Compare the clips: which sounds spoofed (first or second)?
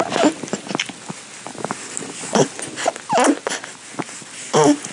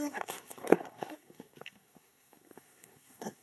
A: second